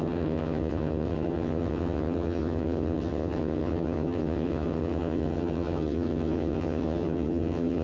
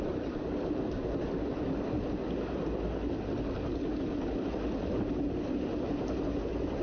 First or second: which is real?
second